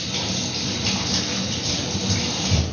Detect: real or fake real